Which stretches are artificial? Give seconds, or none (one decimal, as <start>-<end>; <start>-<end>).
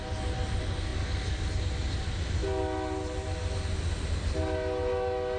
none